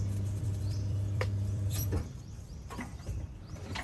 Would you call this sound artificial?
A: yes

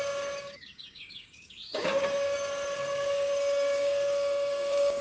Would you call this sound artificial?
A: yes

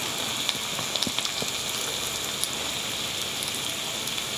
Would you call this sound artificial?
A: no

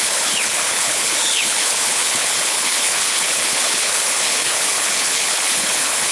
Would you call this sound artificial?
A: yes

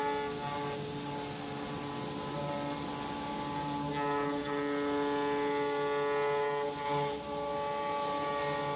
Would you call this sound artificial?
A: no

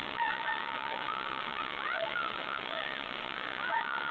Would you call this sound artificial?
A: yes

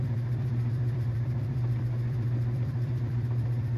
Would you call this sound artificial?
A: yes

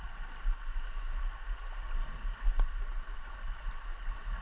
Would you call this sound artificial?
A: no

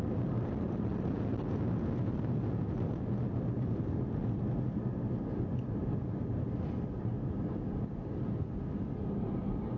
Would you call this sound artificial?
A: no